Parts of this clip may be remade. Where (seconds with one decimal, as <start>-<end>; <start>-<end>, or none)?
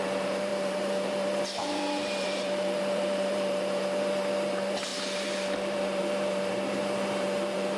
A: 0.0-7.8